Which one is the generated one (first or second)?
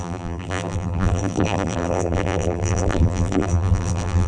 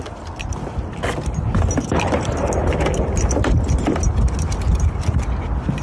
first